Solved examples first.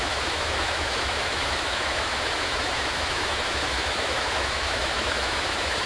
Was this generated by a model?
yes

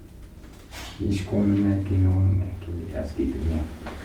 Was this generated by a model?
no